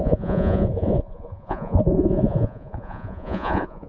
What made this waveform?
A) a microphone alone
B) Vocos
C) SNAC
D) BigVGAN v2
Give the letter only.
B